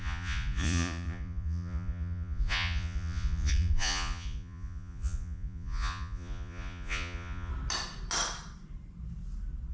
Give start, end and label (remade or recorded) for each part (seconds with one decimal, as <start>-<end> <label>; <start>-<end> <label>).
0.0-7.5 remade; 7.5-9.7 recorded